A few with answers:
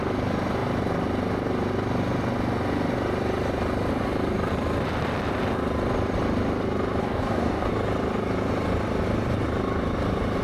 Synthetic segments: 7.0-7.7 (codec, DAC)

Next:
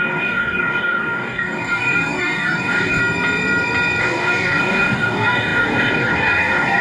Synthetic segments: 0.0-3.0 (codec, DAC); 4.0-6.8

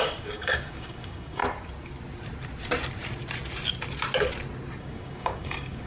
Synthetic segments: 0.0-1.4 (codec, DAC); 4.8-5.9

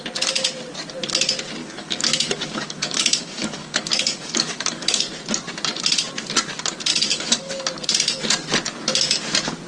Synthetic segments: 1.6-5.0 (codec, DAC); 6.9-7.5